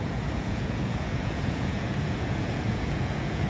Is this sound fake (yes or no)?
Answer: yes